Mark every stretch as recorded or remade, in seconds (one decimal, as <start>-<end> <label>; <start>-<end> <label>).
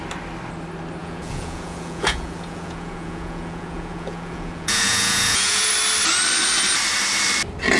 0.0-1.0 recorded; 1.0-5.7 remade; 5.7-7.8 recorded